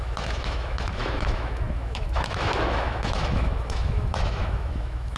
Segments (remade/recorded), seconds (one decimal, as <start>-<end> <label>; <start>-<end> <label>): 0.0-5.2 remade

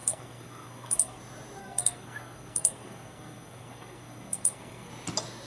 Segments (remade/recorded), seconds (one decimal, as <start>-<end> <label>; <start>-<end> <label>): 0.0-1.2 remade; 1.2-1.6 recorded; 1.6-4.9 remade; 4.9-5.5 recorded

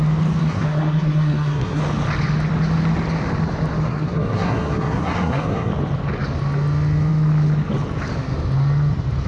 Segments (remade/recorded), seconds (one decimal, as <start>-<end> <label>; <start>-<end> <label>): 0.0-0.4 recorded; 0.4-1.8 remade; 1.8-3.8 recorded; 3.8-5.7 remade; 5.7-9.3 recorded

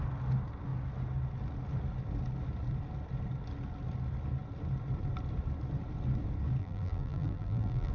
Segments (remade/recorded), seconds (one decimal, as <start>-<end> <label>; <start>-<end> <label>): 0.0-6.6 recorded; 6.6-7.9 remade